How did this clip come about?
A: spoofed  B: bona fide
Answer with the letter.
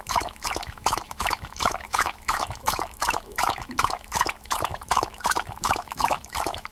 A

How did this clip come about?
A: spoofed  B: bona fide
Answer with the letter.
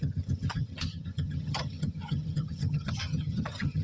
A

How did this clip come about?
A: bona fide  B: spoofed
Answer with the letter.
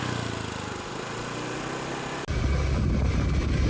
A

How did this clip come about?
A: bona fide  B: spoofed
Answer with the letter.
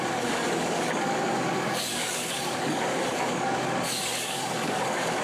B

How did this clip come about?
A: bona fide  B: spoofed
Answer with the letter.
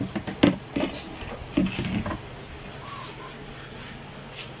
A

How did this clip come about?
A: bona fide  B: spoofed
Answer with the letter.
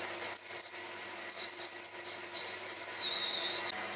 A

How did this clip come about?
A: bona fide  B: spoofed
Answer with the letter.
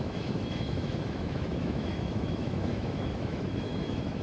B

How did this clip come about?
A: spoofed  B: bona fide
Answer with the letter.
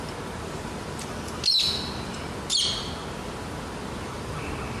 B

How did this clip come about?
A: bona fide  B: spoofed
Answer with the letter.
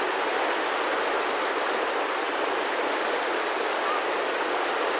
A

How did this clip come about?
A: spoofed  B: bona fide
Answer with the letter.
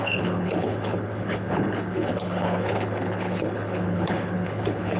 A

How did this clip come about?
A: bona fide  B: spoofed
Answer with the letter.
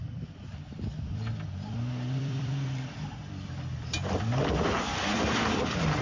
B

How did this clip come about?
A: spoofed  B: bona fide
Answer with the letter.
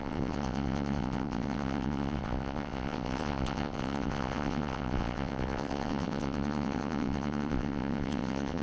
A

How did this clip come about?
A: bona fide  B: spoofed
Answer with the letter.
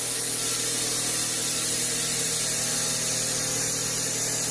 A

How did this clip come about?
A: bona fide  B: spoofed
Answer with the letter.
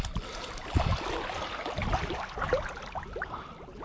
A